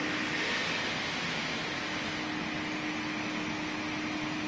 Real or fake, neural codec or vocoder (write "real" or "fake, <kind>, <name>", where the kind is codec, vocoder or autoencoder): real